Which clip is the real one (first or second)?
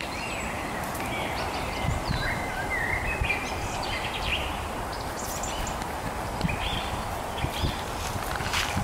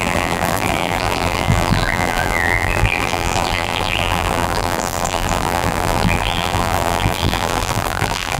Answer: first